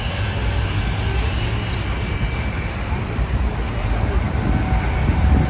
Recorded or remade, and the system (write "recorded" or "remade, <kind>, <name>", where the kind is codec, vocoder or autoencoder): recorded